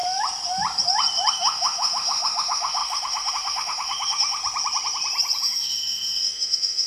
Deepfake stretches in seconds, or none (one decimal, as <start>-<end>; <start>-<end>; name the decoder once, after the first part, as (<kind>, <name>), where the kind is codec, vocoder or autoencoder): 1.3-4.4 (autoencoder, DAC-VAE); 5.4-6.9